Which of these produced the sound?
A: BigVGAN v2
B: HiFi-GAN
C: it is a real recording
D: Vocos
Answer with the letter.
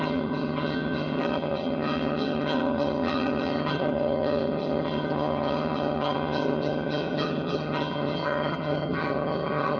B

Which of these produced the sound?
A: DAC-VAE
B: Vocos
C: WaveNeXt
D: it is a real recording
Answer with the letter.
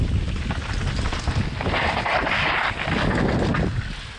D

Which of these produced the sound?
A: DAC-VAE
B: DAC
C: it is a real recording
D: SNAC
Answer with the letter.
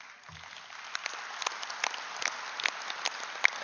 C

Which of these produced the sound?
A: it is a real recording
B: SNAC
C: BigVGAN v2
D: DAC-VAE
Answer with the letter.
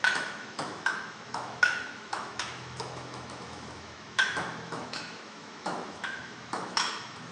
D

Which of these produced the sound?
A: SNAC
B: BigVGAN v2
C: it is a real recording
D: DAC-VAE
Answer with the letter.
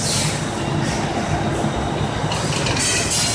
C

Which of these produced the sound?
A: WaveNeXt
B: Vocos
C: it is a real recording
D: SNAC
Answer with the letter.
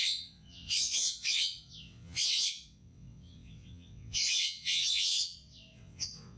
A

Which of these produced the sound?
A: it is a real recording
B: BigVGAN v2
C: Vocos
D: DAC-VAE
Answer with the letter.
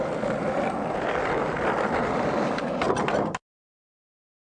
A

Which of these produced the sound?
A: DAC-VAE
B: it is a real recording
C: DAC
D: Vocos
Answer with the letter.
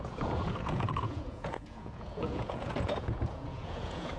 D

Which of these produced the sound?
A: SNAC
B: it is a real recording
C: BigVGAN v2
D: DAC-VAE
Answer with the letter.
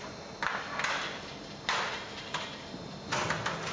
B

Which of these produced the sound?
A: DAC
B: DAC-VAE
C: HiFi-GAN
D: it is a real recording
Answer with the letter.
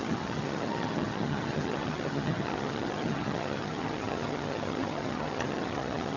C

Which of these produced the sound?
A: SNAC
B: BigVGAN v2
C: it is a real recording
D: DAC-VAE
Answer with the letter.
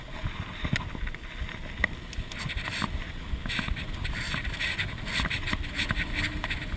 C